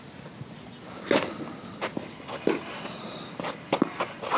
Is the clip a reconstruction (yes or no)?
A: no